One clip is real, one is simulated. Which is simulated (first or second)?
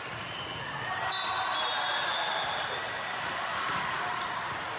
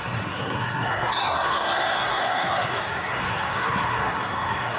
second